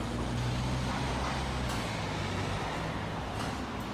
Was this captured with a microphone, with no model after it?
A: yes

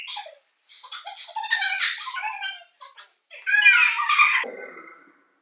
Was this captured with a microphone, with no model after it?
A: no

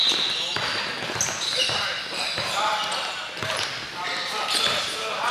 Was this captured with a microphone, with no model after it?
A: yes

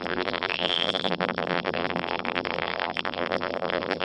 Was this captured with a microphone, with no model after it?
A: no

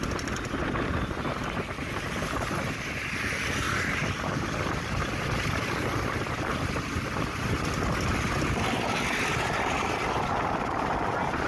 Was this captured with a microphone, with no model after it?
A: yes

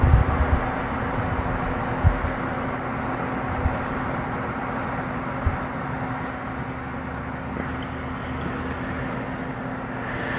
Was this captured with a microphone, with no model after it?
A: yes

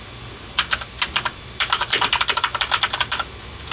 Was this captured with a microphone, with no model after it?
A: yes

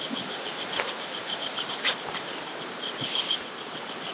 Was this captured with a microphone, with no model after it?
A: no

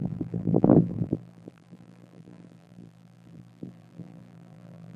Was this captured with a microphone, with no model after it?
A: no